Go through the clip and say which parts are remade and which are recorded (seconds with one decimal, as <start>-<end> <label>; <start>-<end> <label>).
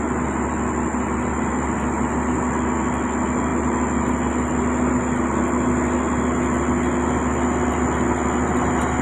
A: 0.0-9.0 recorded